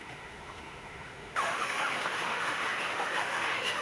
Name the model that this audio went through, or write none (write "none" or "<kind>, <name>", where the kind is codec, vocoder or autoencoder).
autoencoder, DAC-VAE